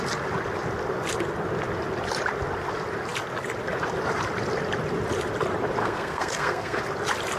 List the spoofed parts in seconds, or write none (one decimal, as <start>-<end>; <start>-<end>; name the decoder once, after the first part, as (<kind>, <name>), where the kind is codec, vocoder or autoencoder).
5.8-6.8 (codec, SNAC)